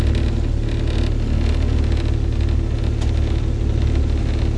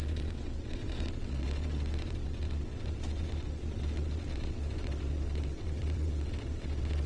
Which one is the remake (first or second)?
second